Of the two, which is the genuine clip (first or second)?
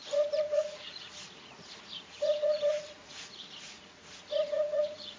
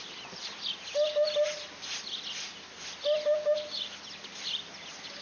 second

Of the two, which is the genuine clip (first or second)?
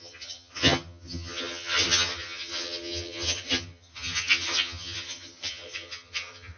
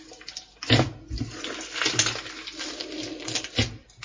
second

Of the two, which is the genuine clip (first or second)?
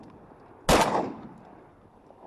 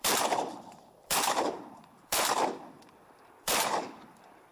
first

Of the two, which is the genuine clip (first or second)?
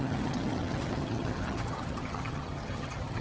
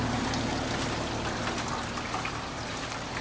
second